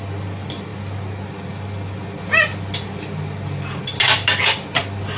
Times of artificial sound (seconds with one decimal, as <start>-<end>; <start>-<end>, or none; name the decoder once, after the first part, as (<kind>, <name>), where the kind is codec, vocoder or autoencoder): none